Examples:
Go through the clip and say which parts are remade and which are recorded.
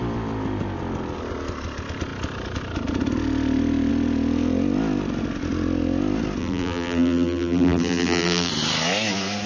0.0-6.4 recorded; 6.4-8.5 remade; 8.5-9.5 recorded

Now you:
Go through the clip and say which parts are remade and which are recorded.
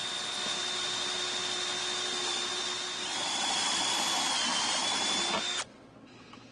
0.0-6.5 recorded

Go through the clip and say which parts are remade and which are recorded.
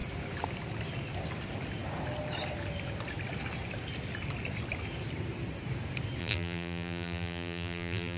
0.0-6.2 recorded; 6.2-8.2 remade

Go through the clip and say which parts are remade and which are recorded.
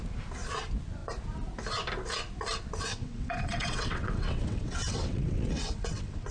0.0-2.9 recorded; 2.9-6.3 remade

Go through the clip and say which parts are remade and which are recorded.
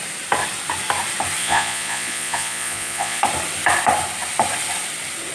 0.0-1.4 recorded; 1.4-3.2 remade; 3.2-5.3 recorded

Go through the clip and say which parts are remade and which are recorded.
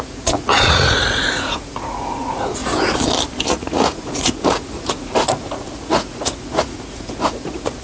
0.0-2.6 remade; 2.6-3.5 recorded; 3.5-7.8 remade